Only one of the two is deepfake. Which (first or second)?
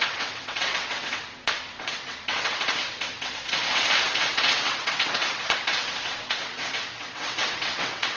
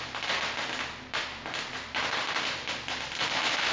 first